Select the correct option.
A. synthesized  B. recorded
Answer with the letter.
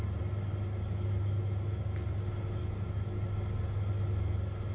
B